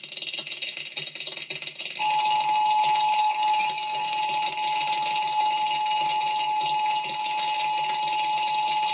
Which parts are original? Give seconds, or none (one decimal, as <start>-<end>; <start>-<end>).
0.0-3.2; 4.2-8.9